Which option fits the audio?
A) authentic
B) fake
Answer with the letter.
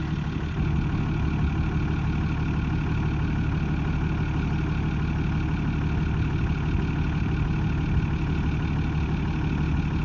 A